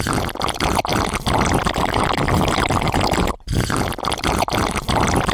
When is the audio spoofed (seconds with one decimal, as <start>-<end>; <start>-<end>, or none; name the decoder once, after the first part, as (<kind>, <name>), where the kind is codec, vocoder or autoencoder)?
none

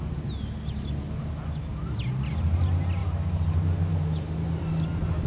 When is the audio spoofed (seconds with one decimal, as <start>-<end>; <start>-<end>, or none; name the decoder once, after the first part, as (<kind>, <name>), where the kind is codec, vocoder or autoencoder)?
none